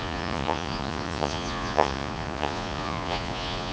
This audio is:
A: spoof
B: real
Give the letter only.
A